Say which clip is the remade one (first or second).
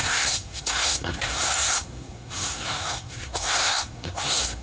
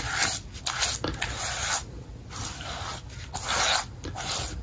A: first